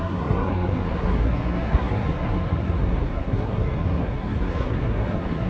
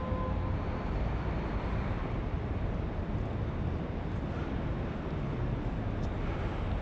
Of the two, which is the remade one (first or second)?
first